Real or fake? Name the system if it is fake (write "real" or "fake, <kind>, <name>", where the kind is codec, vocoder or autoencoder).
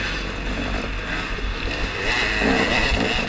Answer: real